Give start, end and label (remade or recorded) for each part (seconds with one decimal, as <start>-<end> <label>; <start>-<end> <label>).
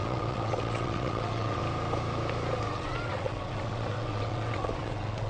0.0-1.6 remade; 1.6-2.7 recorded; 2.7-5.3 remade